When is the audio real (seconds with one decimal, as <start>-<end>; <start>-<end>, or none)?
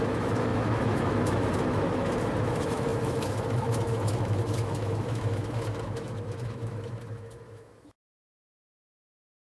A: none